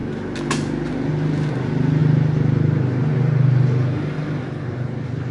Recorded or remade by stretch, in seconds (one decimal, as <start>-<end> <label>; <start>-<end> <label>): 0.0-5.3 recorded